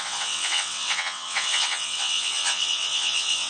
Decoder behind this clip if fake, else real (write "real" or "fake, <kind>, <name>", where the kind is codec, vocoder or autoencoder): fake, vocoder, WaveNeXt